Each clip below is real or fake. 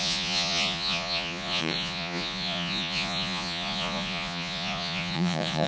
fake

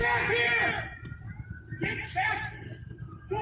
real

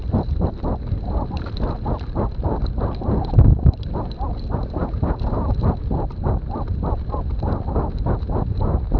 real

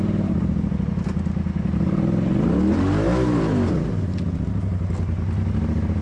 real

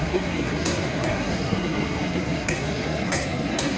fake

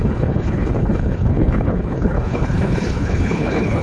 fake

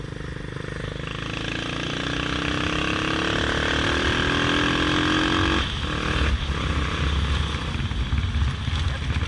real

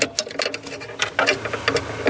real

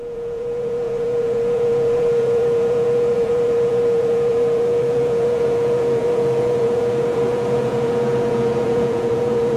fake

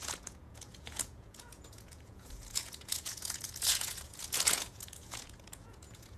fake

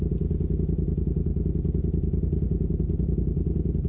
real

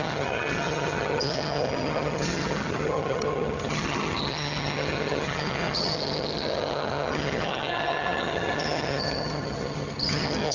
fake